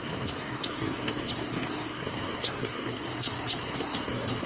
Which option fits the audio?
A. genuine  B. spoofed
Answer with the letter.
B